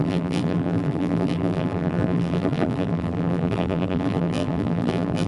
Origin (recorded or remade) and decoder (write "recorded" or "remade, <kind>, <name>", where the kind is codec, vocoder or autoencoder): remade, vocoder, BigVGAN v2